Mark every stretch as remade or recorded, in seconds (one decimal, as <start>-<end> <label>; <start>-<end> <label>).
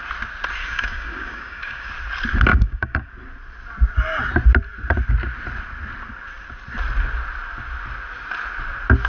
0.0-0.6 recorded; 0.6-1.9 remade; 1.9-2.5 recorded; 2.5-3.1 remade; 3.1-9.1 recorded